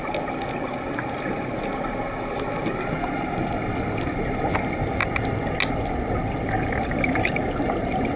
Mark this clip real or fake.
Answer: real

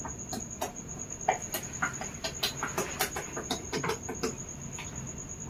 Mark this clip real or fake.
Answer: real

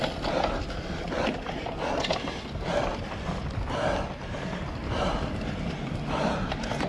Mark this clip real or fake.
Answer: real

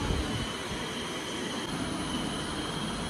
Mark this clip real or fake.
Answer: real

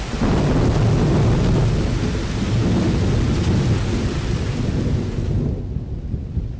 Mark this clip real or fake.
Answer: real